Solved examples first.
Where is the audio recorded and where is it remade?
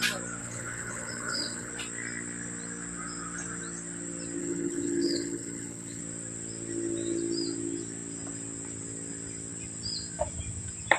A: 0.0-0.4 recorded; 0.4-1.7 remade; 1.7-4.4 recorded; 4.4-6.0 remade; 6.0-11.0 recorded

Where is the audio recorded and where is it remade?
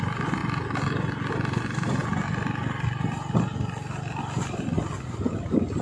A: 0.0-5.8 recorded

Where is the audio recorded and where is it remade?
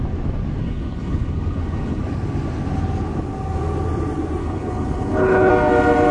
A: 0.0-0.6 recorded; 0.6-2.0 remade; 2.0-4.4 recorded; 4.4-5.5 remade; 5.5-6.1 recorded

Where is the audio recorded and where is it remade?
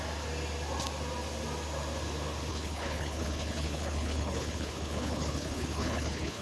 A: 0.0-2.5 recorded; 2.5-6.4 remade